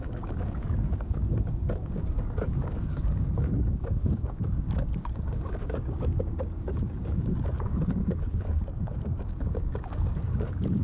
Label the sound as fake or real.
fake